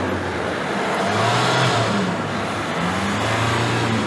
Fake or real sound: real